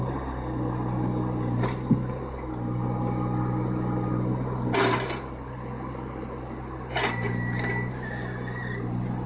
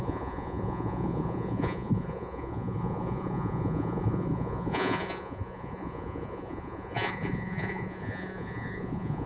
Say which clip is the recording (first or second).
first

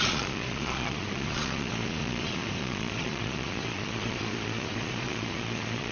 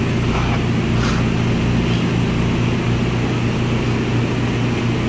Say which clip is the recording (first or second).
second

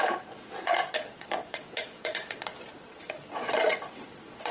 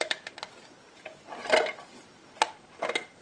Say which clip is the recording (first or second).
second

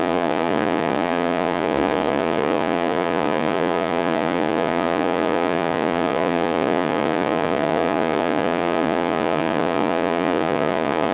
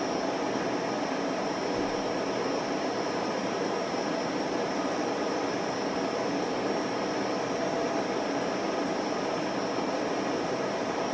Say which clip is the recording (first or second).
second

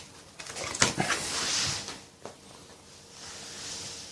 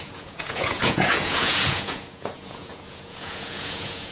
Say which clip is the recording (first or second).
first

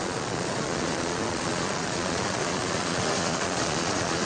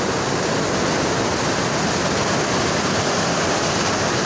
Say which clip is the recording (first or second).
second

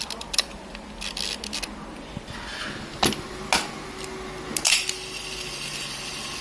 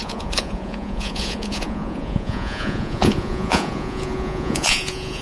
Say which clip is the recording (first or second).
first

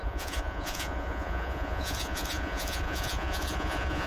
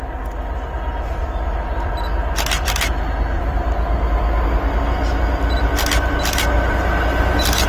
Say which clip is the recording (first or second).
second